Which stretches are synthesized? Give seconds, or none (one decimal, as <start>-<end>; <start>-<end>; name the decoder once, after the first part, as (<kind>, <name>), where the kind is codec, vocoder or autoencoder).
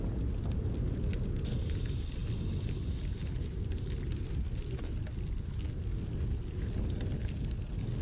none